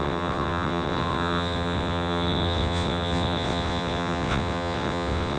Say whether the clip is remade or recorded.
remade